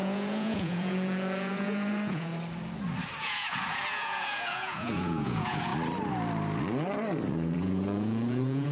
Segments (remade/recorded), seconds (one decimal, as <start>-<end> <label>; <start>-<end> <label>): 0.0-2.3 remade; 2.3-3.2 recorded; 3.2-5.7 remade; 5.7-7.3 recorded; 7.3-8.7 remade